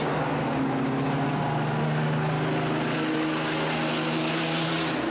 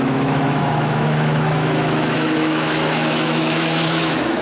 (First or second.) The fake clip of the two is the second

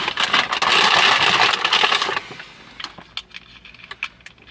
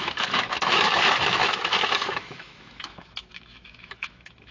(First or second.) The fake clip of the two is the second